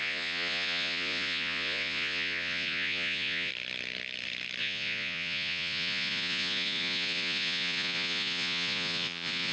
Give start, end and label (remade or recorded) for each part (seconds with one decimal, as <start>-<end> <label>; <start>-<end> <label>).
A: 0.0-3.5 remade; 3.5-4.6 recorded; 4.6-9.5 remade